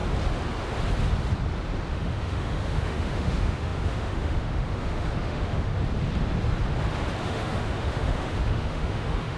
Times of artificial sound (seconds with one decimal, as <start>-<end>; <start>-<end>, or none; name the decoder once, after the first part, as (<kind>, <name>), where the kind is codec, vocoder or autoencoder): 1.9-5.7 (autoencoder, DAC-VAE); 7.2-9.4